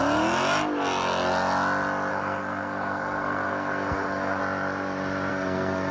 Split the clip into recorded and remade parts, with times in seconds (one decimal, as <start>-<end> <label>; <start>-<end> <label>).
0.0-2.1 recorded; 2.1-4.4 remade; 4.4-5.3 recorded; 5.3-5.9 remade